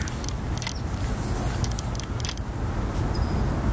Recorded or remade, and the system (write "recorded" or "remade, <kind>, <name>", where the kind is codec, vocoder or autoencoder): recorded